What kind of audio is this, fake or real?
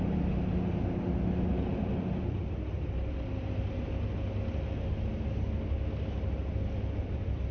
real